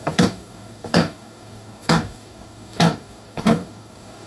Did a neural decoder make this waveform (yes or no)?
yes